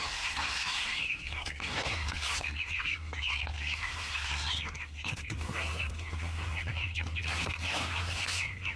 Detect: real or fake fake